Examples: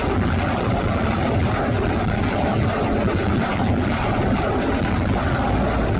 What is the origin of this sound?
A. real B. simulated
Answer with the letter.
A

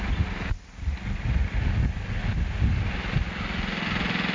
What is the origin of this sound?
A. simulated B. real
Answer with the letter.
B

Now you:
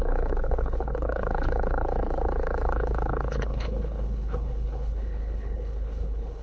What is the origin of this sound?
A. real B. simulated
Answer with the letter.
B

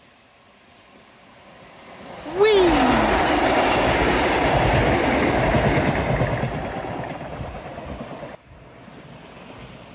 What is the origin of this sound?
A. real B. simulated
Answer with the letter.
A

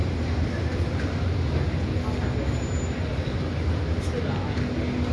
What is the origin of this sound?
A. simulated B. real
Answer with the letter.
B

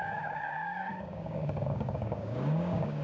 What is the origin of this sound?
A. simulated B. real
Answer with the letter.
A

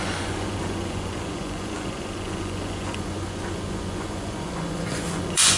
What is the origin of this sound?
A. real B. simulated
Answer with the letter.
B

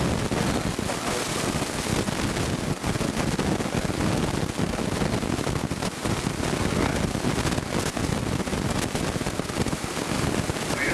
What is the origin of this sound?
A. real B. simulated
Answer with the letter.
A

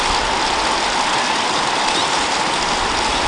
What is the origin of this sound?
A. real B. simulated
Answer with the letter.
A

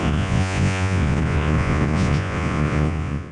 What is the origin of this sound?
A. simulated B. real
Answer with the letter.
A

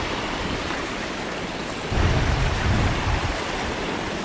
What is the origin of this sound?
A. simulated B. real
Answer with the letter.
B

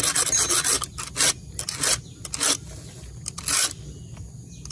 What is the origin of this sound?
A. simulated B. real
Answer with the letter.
B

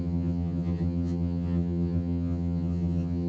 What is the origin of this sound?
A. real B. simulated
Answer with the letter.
B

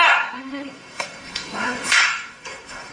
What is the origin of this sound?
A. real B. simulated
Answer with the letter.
B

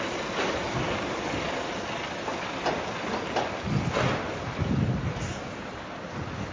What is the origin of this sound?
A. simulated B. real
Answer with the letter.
B